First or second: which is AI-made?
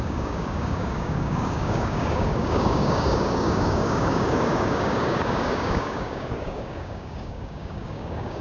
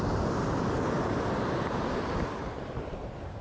first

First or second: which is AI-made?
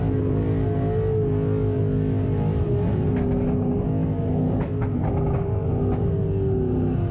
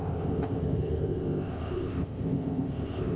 second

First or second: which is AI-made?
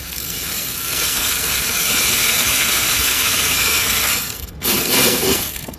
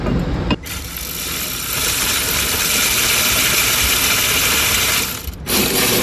first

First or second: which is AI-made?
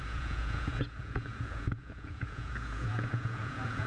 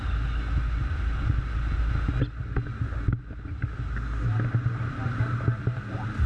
first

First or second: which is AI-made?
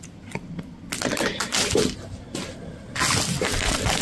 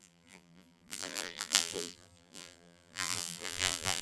second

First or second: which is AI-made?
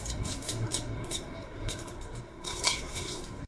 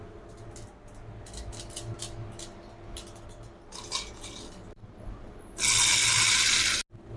first